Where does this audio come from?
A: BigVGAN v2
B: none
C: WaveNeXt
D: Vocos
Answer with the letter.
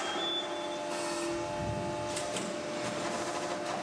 B